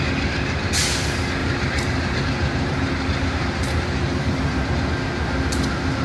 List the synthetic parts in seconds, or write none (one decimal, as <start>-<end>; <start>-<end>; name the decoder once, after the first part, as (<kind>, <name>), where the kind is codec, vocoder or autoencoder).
1.4-4.9 (vocoder, BigVGAN v2)